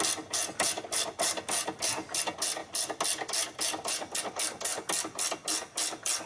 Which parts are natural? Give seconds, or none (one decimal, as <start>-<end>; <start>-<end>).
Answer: 0.0-6.3